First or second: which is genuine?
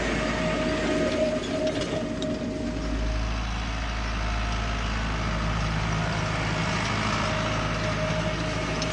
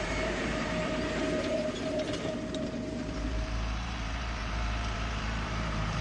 first